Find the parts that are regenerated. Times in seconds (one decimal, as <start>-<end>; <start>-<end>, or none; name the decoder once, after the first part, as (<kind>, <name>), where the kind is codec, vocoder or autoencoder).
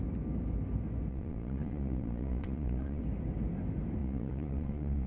1.1-3.0 (vocoder, Vocos); 4.0-5.1